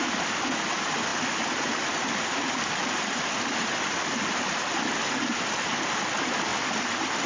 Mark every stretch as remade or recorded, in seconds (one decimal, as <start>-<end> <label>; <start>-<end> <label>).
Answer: 0.0-7.3 recorded